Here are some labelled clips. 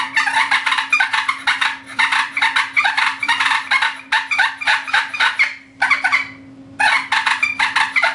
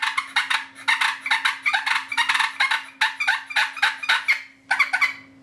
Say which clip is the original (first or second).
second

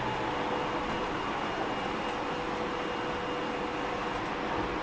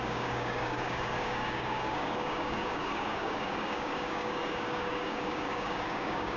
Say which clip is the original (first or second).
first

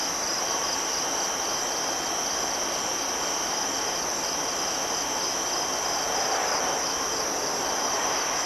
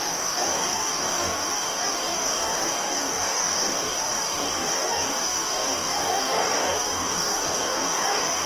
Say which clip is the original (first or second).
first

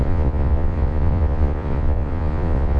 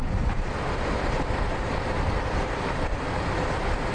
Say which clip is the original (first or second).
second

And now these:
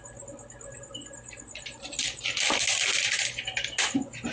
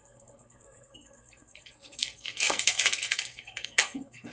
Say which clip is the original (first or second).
first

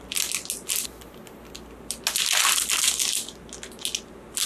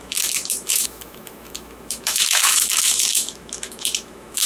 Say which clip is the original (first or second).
first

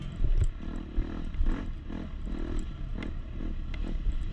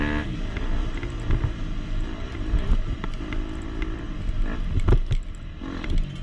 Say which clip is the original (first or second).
second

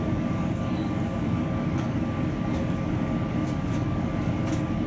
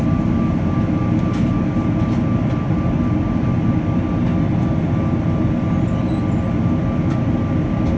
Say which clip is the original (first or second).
second